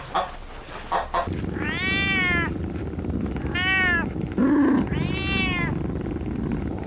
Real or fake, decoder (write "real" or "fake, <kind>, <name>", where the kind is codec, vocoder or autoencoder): real